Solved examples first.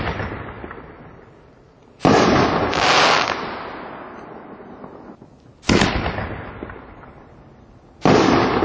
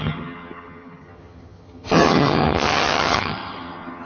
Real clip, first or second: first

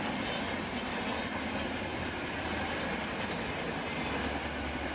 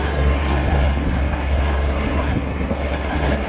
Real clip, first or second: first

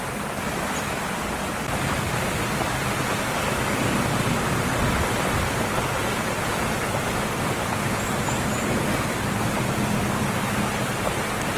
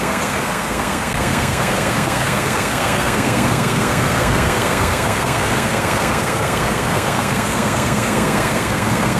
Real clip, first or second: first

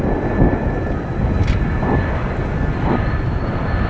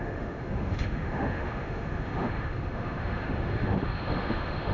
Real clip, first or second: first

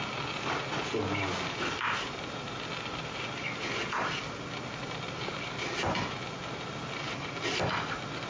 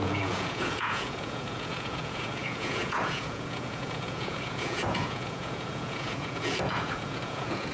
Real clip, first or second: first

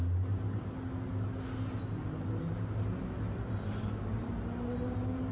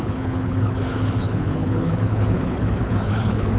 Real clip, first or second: first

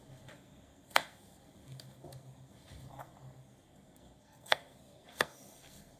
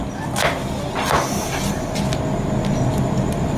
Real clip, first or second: second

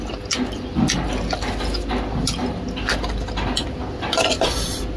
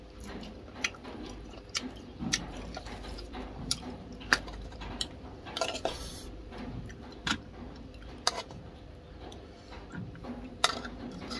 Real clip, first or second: first